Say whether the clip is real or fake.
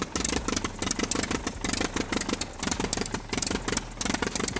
real